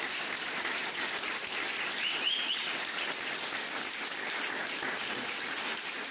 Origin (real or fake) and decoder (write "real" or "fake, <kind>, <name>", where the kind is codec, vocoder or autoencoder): real